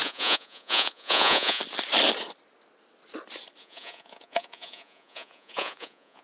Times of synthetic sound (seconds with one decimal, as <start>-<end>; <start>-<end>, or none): 0.0-1.6; 3.6-6.2